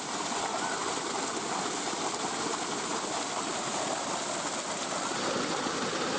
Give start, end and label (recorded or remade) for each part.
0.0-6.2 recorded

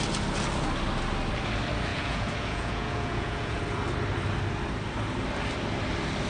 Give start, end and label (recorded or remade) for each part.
0.0-1.9 recorded; 1.9-3.6 remade; 3.6-6.3 recorded